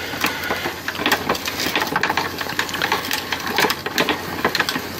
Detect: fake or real real